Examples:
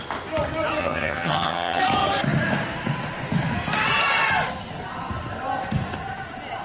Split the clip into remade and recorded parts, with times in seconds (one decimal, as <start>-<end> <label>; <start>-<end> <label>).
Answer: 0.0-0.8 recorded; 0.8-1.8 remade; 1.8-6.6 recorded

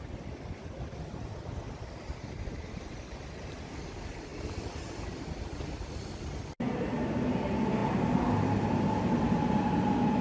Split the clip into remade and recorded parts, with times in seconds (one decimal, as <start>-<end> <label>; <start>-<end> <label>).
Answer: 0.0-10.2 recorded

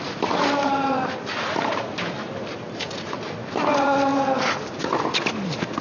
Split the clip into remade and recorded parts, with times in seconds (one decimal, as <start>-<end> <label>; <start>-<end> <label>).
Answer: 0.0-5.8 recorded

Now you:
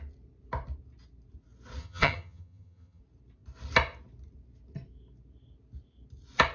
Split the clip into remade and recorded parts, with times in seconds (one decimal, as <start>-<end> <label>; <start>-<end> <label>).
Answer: 0.0-1.8 recorded; 1.8-3.0 remade; 3.0-6.5 recorded

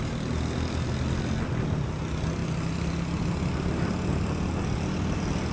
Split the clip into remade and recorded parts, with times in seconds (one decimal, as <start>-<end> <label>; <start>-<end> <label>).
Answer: 0.0-5.5 recorded

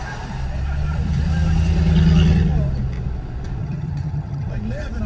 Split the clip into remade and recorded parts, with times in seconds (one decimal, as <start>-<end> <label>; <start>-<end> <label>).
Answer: 0.0-3.6 recorded; 3.6-4.5 remade; 4.5-5.1 recorded

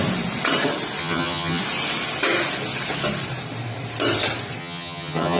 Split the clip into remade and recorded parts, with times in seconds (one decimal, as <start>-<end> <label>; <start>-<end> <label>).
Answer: 0.0-1.0 recorded; 1.0-1.6 remade; 1.6-4.6 recorded; 4.6-5.4 remade

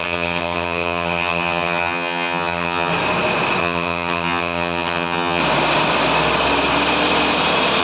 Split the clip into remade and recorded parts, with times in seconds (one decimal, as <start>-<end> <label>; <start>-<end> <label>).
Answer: 0.0-2.9 remade; 2.9-3.6 recorded; 3.6-5.4 remade; 5.4-7.8 recorded